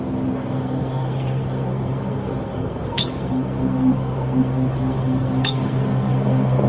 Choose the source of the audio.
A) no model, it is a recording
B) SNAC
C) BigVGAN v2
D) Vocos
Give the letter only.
B